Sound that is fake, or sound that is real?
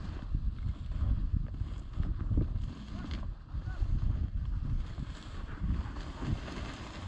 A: real